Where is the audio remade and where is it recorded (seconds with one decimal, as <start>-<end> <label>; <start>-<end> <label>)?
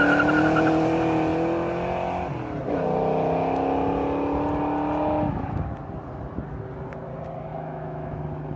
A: 0.0-7.5 recorded; 7.5-8.2 remade; 8.2-8.6 recorded